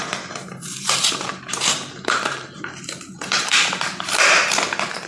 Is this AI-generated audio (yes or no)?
yes